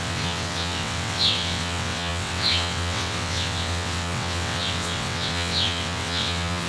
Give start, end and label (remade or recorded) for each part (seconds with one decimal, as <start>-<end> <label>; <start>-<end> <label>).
0.0-6.7 remade